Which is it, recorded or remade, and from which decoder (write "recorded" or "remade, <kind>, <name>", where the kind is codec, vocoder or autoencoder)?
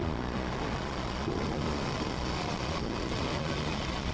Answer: remade, vocoder, Vocos